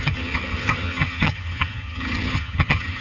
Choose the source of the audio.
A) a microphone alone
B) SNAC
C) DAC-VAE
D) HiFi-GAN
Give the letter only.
D